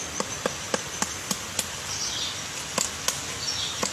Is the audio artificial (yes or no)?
no